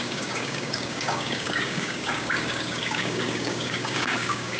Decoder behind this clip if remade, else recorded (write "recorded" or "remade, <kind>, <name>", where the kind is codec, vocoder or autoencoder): remade, codec, DAC